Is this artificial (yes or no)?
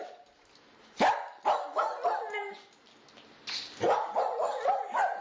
no